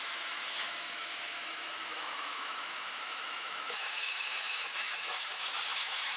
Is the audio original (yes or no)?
no